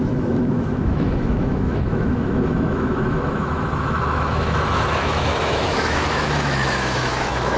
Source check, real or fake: fake